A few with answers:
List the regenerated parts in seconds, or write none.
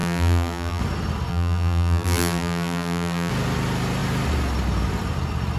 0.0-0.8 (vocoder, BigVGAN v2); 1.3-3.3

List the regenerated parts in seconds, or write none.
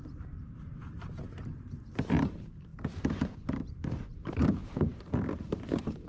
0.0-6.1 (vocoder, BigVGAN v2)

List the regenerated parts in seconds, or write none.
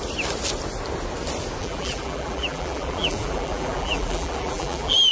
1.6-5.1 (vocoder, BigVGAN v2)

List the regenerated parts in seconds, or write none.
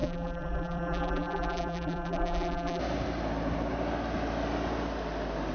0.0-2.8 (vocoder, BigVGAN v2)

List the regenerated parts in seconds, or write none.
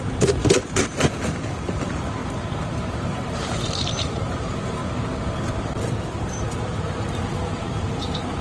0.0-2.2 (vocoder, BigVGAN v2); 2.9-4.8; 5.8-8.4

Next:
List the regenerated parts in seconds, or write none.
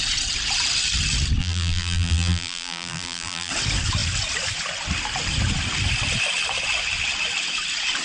1.4-3.5 (vocoder, BigVGAN v2)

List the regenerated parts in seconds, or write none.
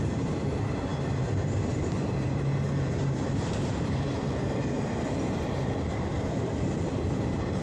0.0-7.6 (vocoder, BigVGAN v2)